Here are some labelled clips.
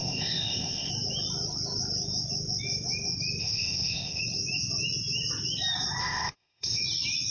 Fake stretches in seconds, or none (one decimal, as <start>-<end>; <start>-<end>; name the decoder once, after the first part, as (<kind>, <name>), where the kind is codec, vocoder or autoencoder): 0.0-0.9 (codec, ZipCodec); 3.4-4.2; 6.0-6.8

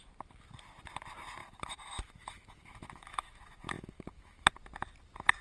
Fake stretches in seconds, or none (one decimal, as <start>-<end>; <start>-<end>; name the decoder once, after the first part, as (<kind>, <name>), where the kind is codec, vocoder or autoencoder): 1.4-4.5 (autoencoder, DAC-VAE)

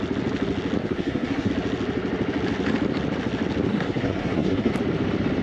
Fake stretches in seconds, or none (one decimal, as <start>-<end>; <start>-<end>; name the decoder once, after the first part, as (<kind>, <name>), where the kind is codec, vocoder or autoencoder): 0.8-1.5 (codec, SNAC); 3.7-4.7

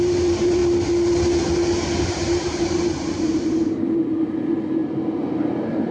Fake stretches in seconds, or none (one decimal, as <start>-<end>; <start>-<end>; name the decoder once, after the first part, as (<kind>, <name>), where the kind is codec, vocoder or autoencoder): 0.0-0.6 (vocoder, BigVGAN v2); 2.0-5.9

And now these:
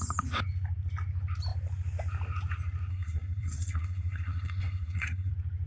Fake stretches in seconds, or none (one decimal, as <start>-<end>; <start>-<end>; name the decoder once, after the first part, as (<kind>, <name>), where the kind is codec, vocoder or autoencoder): 2.9-5.3 (codec, SNAC)

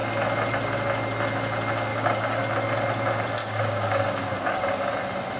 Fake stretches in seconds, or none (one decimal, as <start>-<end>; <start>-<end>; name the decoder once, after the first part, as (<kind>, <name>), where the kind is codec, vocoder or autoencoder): 1.9-2.4 (codec, DAC); 3.4-4.9

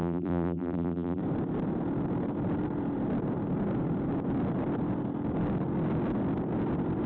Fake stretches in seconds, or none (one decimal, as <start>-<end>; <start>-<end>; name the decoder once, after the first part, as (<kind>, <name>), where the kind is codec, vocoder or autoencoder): 0.0-1.2 (vocoder, BigVGAN v2)